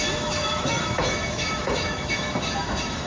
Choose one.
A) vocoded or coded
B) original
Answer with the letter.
A